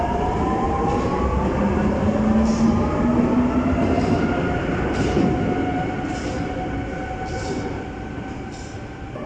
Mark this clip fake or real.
real